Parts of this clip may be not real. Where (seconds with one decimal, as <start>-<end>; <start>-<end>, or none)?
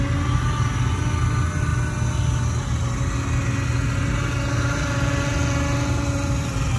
none